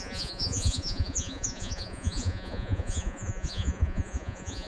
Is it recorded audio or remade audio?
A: remade